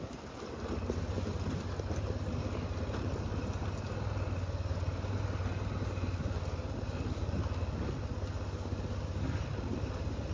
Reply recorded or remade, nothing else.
recorded